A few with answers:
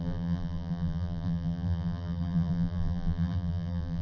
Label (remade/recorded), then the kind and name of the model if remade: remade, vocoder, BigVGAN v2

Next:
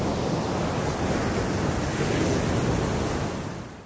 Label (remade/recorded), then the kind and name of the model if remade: recorded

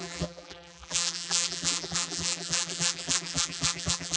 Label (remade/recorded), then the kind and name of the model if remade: remade, vocoder, BigVGAN v2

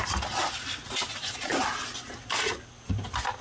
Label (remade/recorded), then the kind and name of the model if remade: recorded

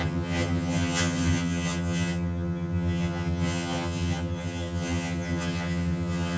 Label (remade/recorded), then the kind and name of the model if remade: remade, vocoder, HiFi-GAN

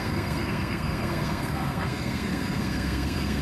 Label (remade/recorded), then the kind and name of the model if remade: remade, codec, SNAC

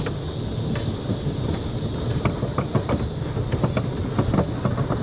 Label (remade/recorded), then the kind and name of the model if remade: recorded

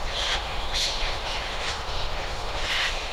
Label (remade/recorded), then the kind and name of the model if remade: remade, autoencoder, DAC-VAE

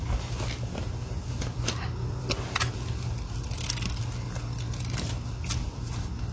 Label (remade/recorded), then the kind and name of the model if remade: recorded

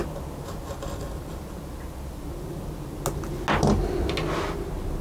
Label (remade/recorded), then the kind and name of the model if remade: recorded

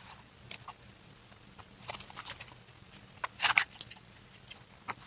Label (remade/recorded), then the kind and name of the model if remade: recorded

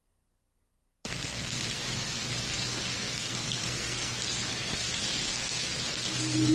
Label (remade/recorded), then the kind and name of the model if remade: remade, codec, SNAC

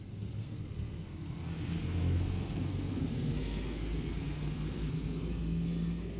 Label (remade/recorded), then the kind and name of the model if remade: remade, codec, SNAC